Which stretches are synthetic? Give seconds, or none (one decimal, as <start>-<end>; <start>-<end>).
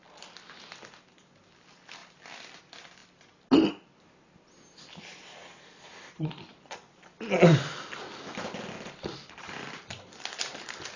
none